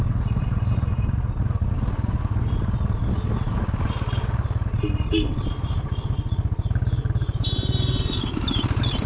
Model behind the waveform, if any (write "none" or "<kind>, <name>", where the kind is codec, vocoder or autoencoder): none